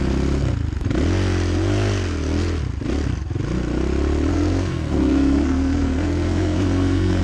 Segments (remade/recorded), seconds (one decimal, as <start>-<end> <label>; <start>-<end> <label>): 0.0-4.3 recorded; 4.3-7.2 remade